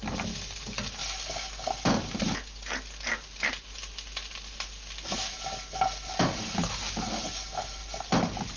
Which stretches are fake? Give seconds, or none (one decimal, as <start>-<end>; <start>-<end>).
none